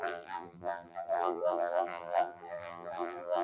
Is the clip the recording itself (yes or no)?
no